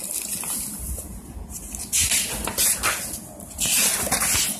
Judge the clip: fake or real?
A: real